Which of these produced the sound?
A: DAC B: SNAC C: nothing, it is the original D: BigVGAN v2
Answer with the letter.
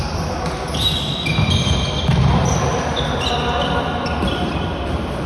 C